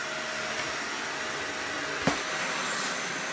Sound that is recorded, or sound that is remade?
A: recorded